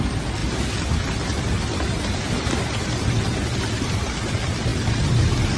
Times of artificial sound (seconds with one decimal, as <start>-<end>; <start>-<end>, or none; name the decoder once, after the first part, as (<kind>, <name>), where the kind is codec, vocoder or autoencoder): none